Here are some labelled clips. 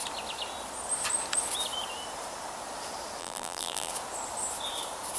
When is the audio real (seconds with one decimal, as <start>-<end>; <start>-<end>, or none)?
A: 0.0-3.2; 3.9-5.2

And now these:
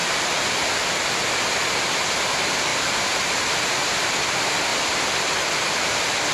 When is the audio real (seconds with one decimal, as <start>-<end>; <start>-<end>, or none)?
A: 0.0-2.7; 3.7-6.3

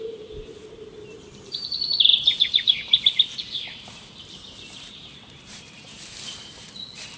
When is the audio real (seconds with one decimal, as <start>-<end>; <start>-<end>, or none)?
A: 0.6-1.1

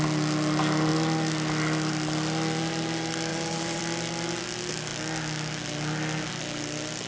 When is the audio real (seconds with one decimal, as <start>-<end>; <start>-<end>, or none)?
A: 0.0-3.3; 3.8-7.1

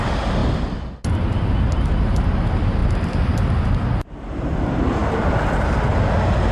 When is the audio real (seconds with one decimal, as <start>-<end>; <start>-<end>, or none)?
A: 0.0-2.8; 3.5-5.0; 5.9-6.5

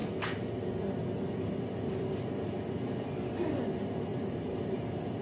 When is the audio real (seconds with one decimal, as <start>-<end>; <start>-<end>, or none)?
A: 0.0-4.1

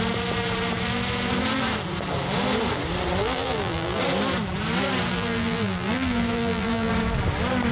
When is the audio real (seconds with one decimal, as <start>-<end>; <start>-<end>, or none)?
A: 0.0-3.2; 4.0-5.1; 6.9-7.7

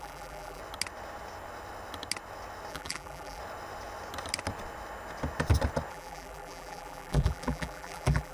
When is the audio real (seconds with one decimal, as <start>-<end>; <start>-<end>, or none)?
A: 0.6-2.7; 3.4-5.9